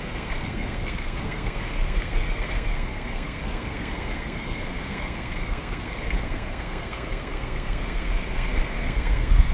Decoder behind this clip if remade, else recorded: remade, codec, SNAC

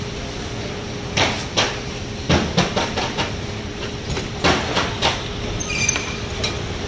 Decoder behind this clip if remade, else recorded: remade, vocoder, BigVGAN v2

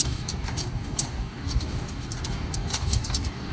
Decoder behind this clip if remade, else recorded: remade, codec, DAC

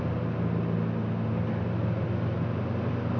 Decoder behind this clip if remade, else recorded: recorded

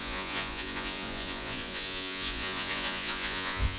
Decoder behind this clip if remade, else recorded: remade, vocoder, Vocos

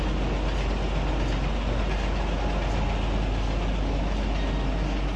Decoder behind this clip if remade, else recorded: recorded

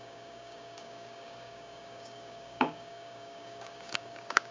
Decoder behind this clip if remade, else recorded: remade, codec, DAC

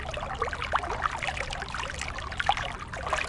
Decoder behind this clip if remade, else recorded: recorded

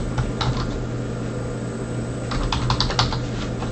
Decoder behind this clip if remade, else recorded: recorded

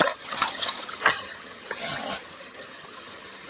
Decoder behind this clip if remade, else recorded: remade, vocoder, HiFi-GAN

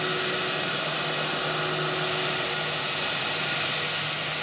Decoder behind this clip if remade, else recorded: recorded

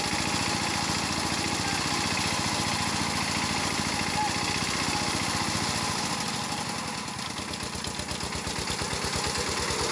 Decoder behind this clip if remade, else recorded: recorded